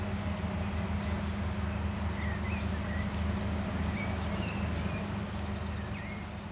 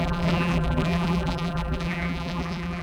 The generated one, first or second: second